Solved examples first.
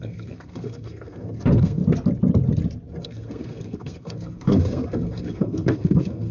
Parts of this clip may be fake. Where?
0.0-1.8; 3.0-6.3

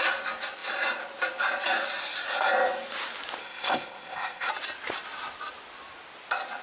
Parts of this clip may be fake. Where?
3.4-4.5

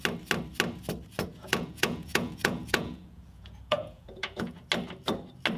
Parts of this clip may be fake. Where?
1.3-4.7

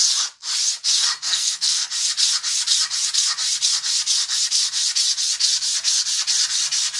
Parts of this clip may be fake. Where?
1.3-1.9

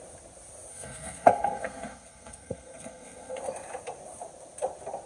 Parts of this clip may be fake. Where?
0.7-3.4